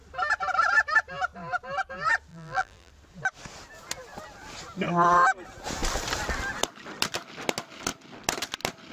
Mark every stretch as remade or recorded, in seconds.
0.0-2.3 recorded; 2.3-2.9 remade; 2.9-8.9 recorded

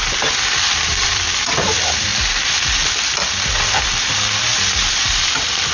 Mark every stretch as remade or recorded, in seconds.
0.0-5.7 remade

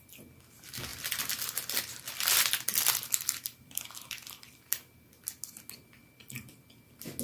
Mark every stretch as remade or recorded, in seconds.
0.0-0.9 recorded; 0.9-5.1 remade; 5.1-7.2 recorded

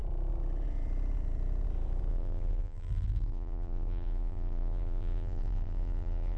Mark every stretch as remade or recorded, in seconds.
0.0-2.1 recorded; 2.1-6.4 remade

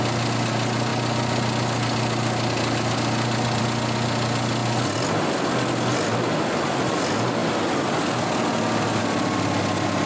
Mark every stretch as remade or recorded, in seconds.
0.0-10.1 recorded